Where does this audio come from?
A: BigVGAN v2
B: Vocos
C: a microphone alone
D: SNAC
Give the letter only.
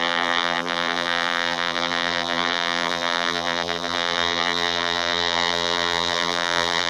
A